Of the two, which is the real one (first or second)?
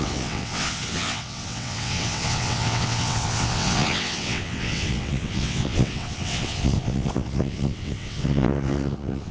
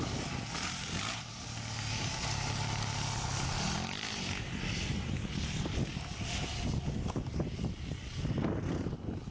second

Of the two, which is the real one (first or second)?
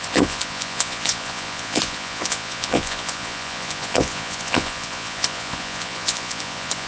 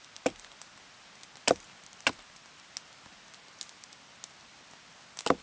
second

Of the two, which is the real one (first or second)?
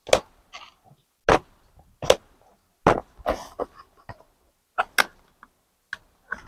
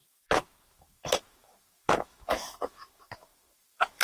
first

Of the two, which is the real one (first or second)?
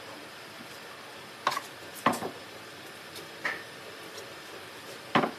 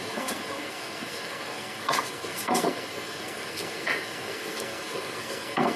first